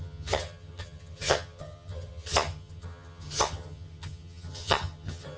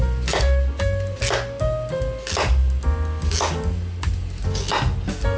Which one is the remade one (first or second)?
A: first